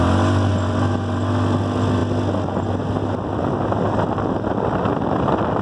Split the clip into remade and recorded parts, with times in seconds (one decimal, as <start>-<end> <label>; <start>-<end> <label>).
0.0-5.6 recorded